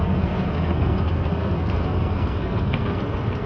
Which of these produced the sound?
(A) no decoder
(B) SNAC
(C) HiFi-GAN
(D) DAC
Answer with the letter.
B